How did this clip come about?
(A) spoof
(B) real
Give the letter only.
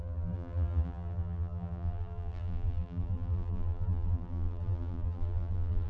A